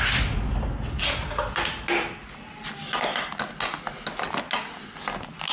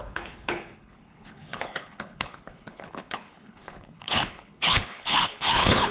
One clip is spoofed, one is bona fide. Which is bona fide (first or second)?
first